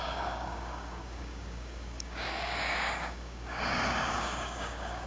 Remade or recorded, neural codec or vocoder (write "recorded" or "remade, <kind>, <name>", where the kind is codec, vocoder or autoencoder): remade, codec, DAC